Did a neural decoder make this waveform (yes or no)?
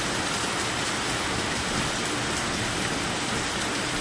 yes